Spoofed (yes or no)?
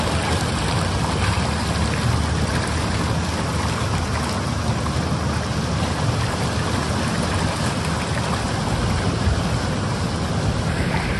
no